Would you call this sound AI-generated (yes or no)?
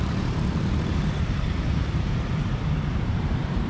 yes